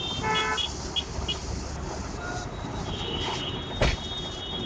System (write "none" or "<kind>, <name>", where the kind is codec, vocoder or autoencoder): none